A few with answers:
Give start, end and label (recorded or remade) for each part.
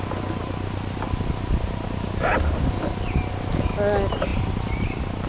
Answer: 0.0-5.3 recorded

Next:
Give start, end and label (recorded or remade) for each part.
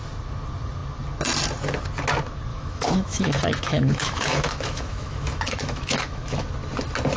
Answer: 0.0-2.5 recorded; 2.5-6.4 remade; 6.4-7.2 recorded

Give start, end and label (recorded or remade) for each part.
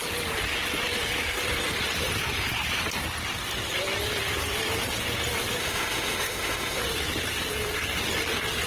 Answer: 0.0-5.6 recorded; 5.6-6.8 remade; 6.8-8.7 recorded